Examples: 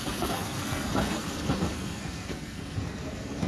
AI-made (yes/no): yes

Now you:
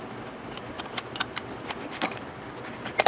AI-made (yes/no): no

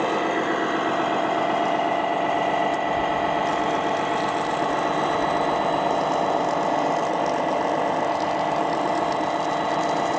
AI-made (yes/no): no